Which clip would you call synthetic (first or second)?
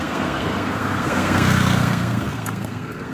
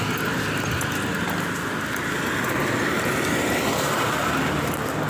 first